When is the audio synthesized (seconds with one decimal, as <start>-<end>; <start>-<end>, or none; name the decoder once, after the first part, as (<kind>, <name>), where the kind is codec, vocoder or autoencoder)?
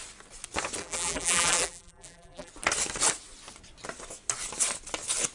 0.8-2.5 (vocoder, BigVGAN v2)